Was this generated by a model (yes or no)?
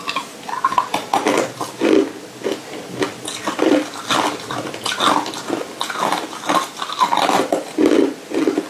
no